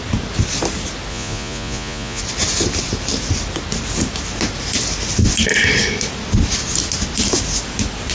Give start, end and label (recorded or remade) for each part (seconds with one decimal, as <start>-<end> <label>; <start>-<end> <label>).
0.0-1.1 recorded; 1.1-2.2 remade; 2.2-8.1 recorded

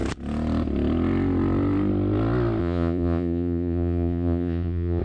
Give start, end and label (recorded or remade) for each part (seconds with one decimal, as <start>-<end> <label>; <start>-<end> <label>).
0.0-2.6 recorded; 2.6-5.0 remade

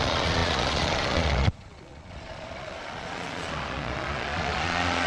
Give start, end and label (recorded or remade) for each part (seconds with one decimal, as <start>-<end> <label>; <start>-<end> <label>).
0.0-5.1 remade

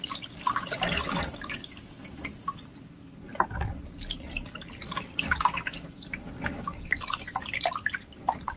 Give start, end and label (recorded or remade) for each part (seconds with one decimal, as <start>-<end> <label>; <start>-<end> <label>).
0.0-8.6 recorded

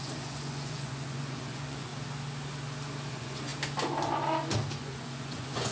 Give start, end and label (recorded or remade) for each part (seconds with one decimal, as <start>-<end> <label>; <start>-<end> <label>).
0.0-1.9 remade; 1.9-3.1 recorded; 3.1-3.5 remade; 3.5-4.8 recorded; 4.8-5.7 remade